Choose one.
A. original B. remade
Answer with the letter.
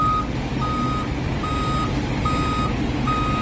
A